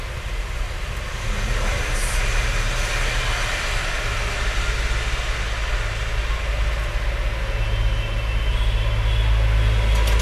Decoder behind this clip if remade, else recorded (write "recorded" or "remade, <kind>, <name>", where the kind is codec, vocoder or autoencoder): recorded